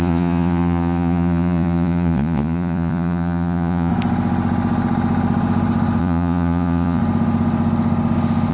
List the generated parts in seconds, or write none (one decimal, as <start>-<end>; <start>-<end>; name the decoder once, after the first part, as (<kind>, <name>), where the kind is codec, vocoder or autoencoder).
0.0-3.9 (vocoder, Vocos); 6.0-7.0